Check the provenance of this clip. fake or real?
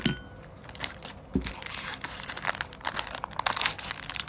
real